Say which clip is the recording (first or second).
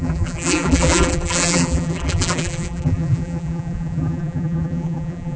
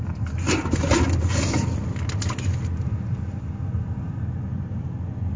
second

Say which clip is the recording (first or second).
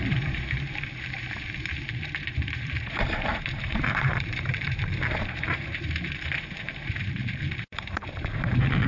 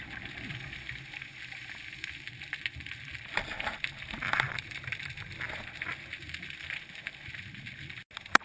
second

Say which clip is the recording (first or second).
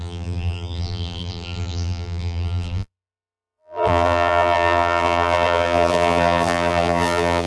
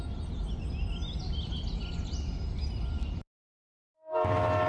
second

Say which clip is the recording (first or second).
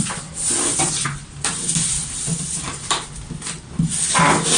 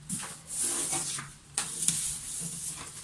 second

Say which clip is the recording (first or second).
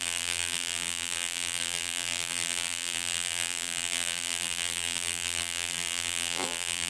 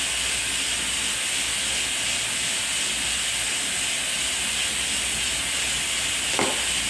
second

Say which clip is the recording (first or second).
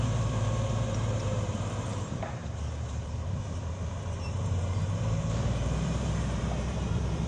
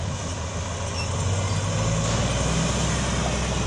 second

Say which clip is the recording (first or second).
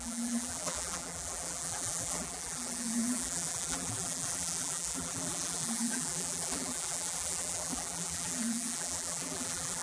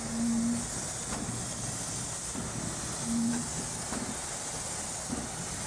second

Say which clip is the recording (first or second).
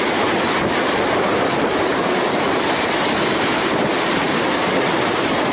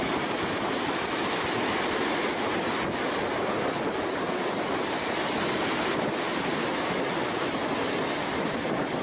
second